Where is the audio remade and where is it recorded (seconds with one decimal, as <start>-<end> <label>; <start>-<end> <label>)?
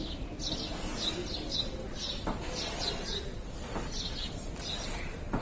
0.0-5.4 recorded